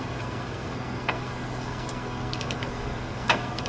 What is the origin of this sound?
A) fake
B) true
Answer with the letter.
A